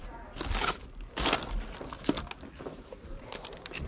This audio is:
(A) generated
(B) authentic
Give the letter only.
B